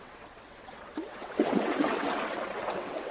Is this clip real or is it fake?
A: fake